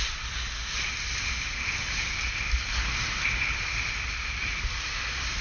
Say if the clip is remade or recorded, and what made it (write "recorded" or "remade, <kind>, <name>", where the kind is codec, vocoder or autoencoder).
recorded